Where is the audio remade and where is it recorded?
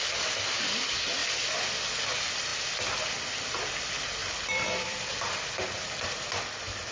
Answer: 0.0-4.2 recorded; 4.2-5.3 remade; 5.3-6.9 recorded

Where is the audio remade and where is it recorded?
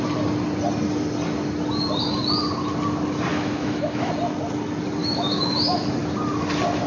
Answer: 0.0-3.3 recorded; 3.3-4.1 remade; 4.1-5.0 recorded; 5.0-5.9 remade; 5.9-6.9 recorded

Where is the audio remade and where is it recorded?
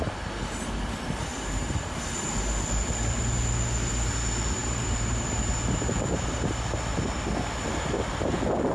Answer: 0.0-1.3 recorded; 1.3-2.0 remade; 2.0-4.6 recorded; 4.6-5.9 remade; 5.9-8.7 recorded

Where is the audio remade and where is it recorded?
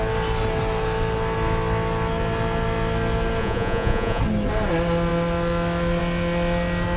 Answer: 0.0-3.4 recorded; 3.4-4.2 remade; 4.2-7.0 recorded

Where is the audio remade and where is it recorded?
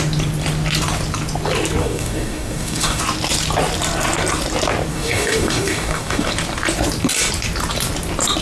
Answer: 0.0-1.8 recorded; 1.8-3.0 remade; 3.0-4.9 recorded; 4.9-6.3 remade; 6.3-8.4 recorded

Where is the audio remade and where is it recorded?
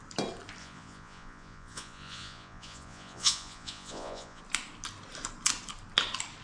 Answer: 0.0-0.6 recorded; 0.6-4.4 remade; 4.4-6.4 recorded